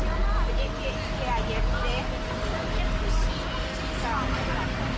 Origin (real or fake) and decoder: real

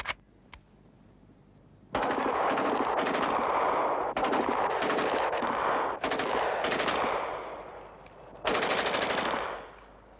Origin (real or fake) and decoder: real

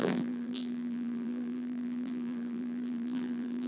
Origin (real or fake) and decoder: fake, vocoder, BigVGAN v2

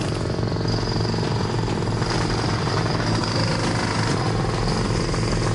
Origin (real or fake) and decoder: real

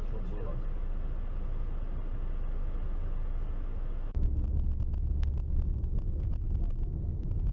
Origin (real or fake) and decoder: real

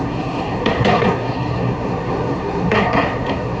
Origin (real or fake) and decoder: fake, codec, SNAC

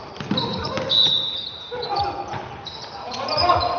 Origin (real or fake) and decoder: real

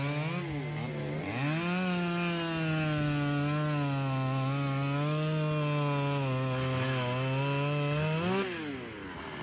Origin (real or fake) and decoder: real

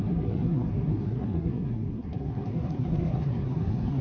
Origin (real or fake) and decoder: fake, codec, SNAC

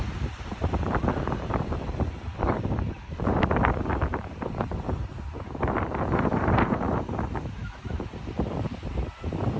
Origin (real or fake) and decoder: fake, vocoder, BigVGAN v2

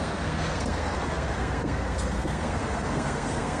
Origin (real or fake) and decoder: fake, codec, SNAC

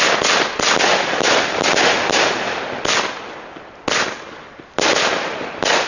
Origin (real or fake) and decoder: real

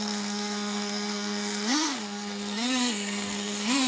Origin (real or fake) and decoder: fake, codec, SNAC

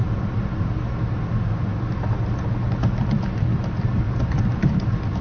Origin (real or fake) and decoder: real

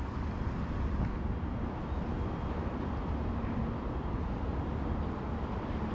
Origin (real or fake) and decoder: real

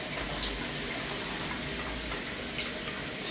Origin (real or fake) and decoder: real